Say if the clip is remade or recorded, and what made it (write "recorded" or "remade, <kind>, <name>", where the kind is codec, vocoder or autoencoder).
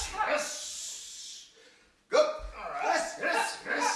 recorded